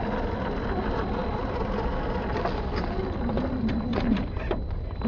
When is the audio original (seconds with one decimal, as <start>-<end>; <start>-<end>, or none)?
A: 0.0-5.1